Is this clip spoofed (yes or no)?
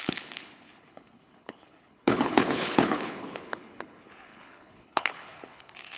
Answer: yes